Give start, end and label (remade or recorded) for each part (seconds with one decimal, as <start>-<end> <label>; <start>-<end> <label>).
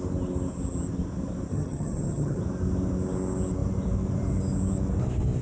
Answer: 0.0-1.5 recorded; 1.5-2.4 remade; 2.4-5.4 recorded